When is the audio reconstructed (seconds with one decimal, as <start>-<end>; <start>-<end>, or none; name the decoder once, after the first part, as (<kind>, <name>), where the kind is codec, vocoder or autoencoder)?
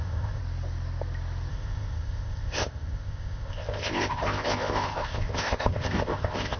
0.0-0.4 (codec, ZipCodec); 1.5-6.6